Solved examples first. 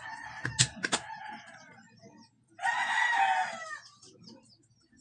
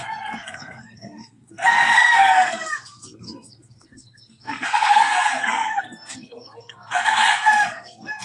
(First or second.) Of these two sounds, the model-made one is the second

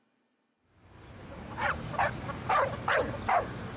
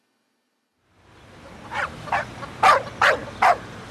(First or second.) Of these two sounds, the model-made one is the first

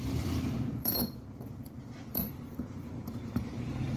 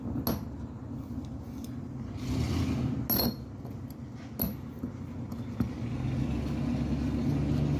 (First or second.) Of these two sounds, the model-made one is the first